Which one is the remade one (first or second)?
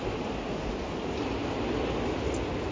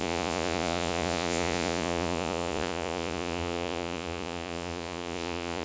second